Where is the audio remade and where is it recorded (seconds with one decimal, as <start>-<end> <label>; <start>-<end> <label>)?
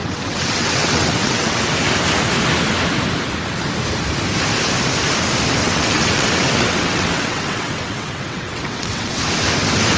0.0-1.6 remade; 1.6-5.6 recorded; 5.6-9.2 remade; 9.2-10.0 recorded